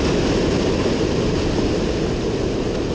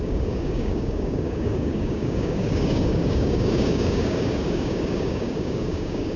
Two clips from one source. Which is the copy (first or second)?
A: second